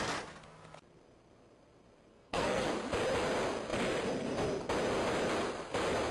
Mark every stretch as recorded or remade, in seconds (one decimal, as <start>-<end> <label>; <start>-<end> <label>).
0.0-2.1 recorded; 2.1-2.7 remade; 2.7-6.1 recorded

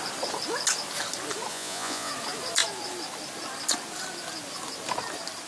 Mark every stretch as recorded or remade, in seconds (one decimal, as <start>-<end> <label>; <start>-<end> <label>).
0.0-1.5 recorded; 1.5-2.1 remade; 2.1-5.5 recorded

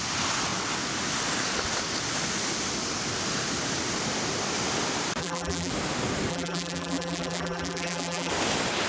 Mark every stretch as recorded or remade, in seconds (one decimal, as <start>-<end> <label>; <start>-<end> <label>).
0.0-5.2 recorded; 5.2-5.7 remade; 5.7-6.3 recorded; 6.3-8.3 remade; 8.3-8.9 recorded

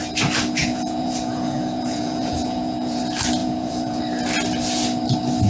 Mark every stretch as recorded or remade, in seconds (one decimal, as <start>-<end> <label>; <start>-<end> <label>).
0.0-0.6 recorded; 0.6-3.0 remade; 3.0-3.4 recorded; 3.4-4.0 remade; 4.0-5.5 recorded

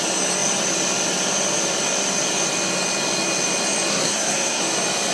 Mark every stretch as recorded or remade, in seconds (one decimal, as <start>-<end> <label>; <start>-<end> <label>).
0.0-3.9 recorded; 3.9-4.6 remade; 4.6-5.1 recorded

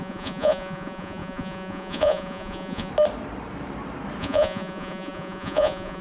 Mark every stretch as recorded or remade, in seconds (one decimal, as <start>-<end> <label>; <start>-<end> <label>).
0.0-2.9 remade; 2.9-4.2 recorded; 4.2-6.0 remade

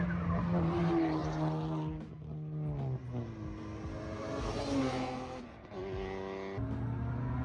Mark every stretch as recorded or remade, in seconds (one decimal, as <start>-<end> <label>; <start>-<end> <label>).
0.0-7.4 recorded

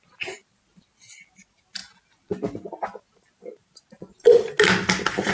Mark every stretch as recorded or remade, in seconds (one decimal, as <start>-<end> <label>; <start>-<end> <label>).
0.0-5.3 recorded